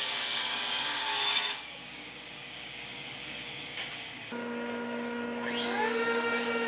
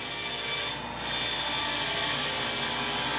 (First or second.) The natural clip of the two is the second